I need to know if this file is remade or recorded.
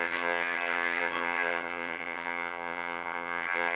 remade